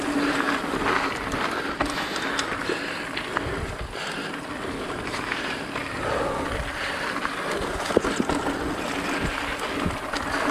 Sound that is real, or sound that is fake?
real